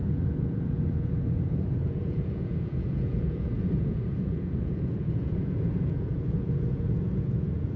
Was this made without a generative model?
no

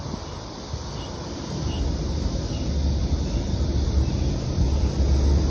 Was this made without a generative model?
yes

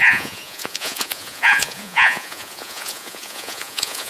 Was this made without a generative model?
no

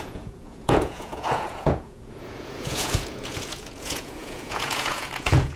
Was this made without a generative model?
no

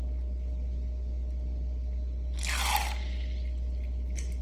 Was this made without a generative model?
yes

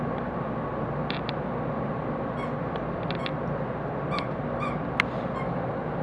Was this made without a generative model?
yes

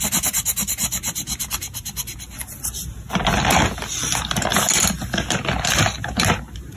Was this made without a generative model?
yes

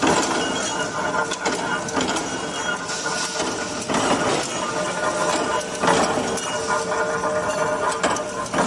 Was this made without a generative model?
yes